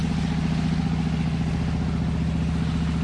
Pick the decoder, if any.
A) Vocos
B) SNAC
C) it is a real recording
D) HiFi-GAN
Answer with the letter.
C